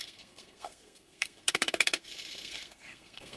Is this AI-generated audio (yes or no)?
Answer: yes